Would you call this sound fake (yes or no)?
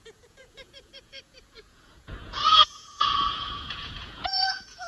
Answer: yes